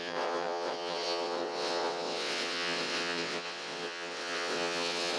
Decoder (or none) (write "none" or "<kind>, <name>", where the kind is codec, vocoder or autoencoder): vocoder, WaveNeXt